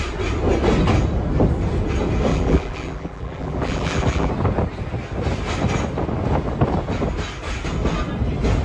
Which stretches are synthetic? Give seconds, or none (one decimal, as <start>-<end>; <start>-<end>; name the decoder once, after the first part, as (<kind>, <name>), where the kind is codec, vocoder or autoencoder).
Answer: 2.3-4.3 (vocoder, BigVGAN v2)